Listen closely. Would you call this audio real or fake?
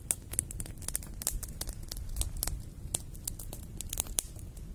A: real